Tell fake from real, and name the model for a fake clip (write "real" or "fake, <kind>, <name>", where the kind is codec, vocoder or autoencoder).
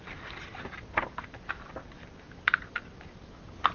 real